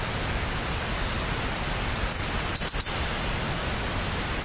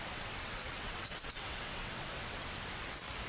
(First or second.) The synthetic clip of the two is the second